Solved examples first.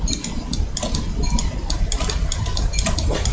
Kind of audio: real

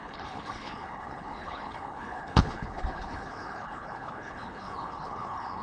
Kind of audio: fake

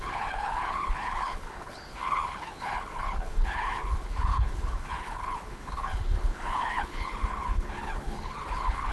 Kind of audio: fake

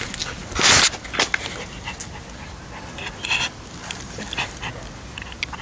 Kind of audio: real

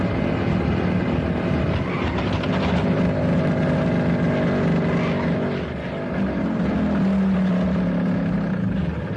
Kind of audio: real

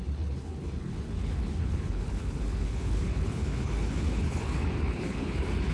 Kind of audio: fake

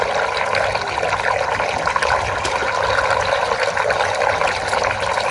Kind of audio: real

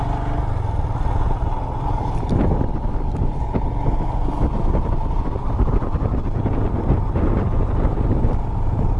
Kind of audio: real